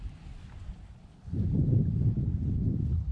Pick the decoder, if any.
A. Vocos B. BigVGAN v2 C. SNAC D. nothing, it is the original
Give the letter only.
D